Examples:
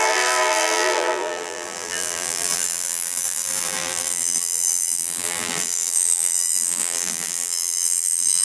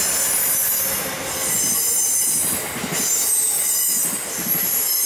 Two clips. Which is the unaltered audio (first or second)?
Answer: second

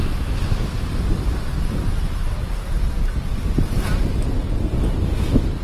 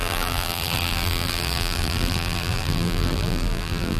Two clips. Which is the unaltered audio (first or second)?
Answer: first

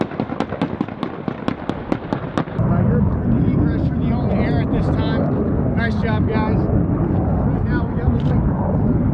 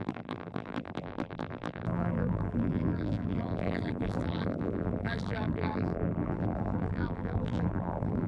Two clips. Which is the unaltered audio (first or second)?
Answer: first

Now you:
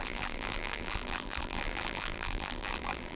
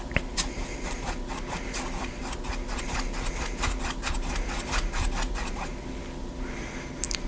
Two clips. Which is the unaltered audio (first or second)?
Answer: second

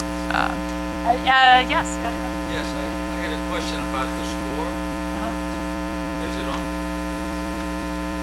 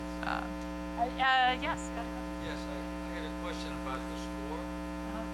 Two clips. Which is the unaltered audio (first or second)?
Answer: second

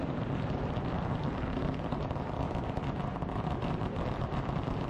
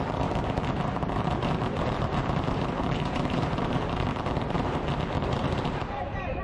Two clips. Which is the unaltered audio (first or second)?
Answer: first